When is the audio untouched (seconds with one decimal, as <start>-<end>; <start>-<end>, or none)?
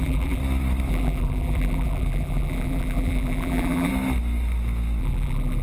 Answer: 0.4-0.9; 3.9-5.0